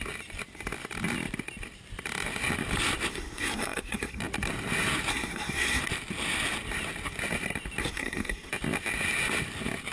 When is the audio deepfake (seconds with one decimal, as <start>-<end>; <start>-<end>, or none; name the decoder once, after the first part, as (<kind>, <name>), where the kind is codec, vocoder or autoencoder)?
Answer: 3.1-4.2 (codec, SNAC); 5.1-5.8; 7.8-8.5